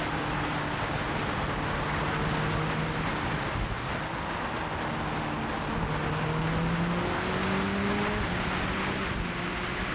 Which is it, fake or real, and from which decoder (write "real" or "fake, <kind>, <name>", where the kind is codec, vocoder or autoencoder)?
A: real